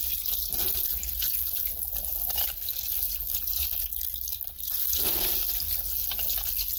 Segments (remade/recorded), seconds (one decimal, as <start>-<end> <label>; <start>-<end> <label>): 0.0-6.8 recorded